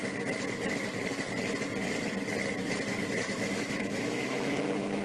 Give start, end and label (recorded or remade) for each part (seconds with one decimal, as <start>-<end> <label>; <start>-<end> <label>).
0.0-3.0 recorded; 3.0-5.0 remade